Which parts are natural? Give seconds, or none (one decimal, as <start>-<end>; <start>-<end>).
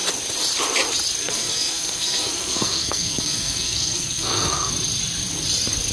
0.0-1.2; 4.7-5.9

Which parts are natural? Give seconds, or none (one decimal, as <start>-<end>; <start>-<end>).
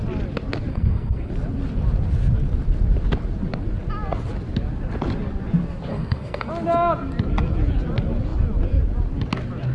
0.0-0.7; 1.3-5.9; 6.5-9.7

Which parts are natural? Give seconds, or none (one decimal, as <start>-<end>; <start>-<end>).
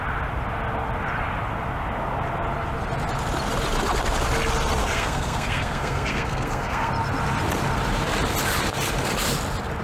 0.0-4.8; 6.9-9.8